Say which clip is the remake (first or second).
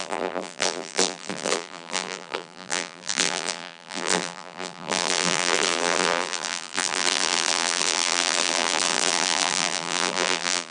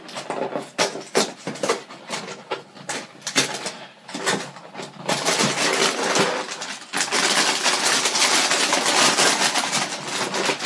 first